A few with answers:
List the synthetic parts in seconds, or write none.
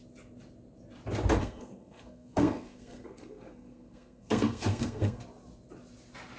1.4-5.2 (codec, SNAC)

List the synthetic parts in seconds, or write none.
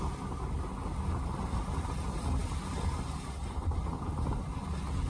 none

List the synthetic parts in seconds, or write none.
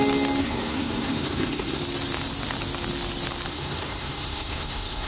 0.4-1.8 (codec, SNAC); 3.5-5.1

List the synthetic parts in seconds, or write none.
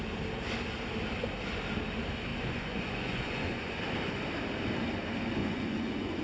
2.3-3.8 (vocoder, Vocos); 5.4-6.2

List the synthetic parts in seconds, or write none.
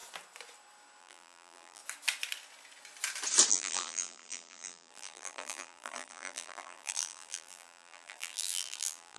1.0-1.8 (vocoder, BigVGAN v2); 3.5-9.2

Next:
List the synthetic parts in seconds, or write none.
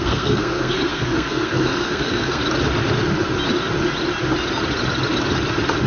0.0-2.4 (codec, SNAC)